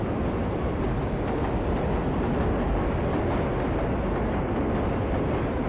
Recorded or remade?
recorded